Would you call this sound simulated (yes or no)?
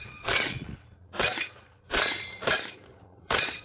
yes